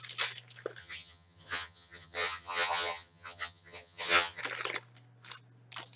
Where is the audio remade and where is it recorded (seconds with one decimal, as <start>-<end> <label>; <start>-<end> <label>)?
0.0-0.8 recorded; 0.8-4.4 remade; 4.4-6.0 recorded